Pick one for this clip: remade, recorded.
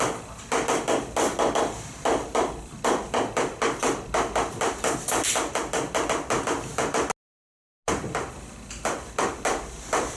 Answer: recorded